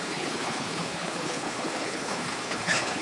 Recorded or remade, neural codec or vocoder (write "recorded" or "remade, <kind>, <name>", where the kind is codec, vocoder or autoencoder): remade, codec, HILCodec